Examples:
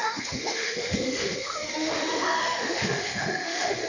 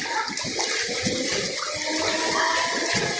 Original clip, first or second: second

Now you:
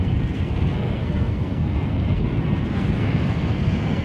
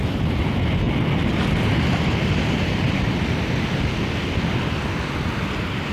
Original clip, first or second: second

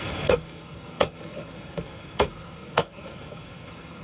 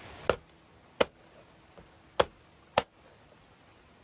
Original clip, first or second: second